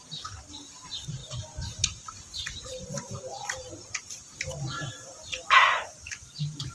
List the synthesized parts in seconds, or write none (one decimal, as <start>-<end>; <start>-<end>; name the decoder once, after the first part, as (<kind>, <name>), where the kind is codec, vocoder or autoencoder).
0.0-5.1 (vocoder, BigVGAN v2); 6.1-6.7